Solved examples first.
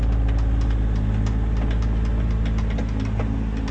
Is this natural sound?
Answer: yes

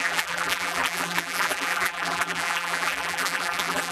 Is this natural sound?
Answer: no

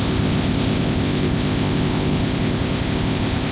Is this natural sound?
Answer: no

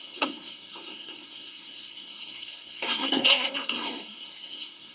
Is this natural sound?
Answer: no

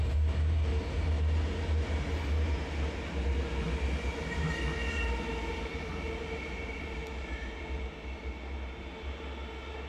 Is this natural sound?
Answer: yes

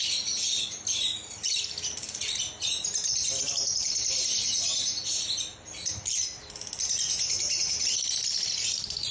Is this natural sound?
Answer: yes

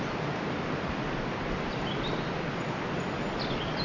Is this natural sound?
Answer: yes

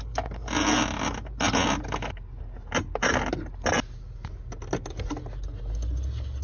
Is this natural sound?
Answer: yes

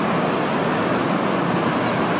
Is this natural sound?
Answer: yes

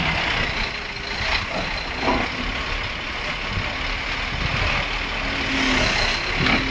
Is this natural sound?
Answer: yes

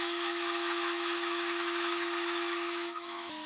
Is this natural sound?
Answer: no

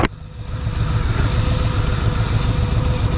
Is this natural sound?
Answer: yes